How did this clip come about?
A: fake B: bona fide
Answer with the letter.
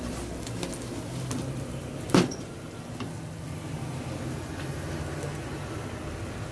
B